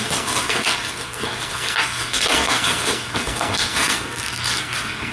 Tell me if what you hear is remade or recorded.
remade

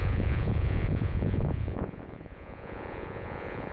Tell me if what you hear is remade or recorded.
remade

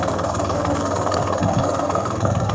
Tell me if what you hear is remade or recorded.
remade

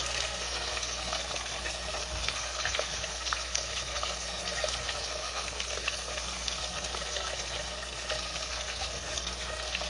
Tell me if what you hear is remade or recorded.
remade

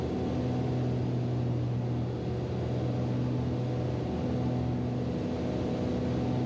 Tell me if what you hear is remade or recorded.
recorded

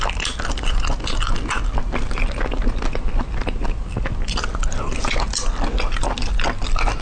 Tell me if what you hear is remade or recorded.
recorded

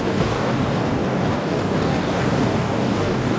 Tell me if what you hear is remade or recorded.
remade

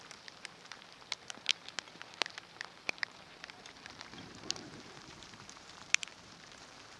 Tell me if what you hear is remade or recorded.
remade